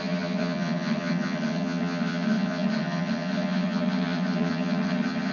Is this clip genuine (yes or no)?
no